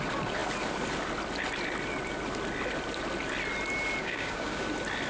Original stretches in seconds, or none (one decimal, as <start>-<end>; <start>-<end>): 0.0-4.0; 4.6-5.1